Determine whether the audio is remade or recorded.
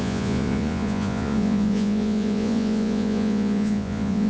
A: remade